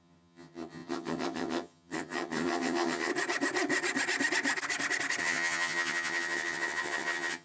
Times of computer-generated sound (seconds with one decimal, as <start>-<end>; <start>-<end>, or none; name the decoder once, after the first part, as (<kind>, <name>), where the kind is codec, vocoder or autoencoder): 0.0-3.1 (vocoder, HiFi-GAN); 5.2-7.4